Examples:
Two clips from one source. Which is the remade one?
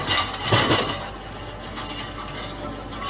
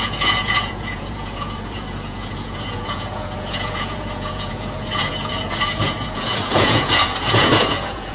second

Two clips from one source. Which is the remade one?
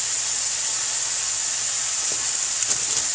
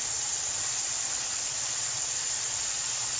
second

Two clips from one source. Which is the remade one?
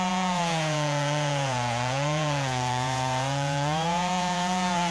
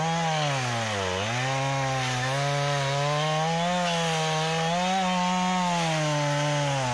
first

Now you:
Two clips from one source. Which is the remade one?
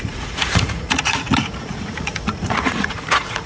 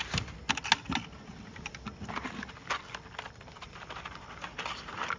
first